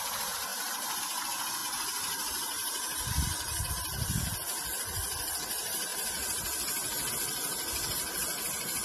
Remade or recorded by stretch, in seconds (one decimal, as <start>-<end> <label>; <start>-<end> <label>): 0.0-0.5 recorded; 0.5-1.0 remade; 1.0-1.6 recorded; 1.6-3.7 remade; 3.7-8.8 recorded